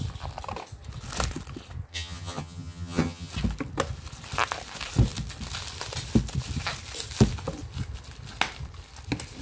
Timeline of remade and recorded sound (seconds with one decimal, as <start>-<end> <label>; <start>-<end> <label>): 0.0-1.9 recorded; 1.9-3.3 remade; 3.3-9.4 recorded